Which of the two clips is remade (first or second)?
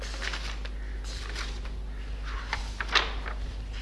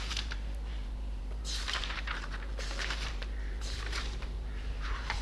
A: second